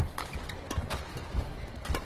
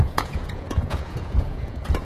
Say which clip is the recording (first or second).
first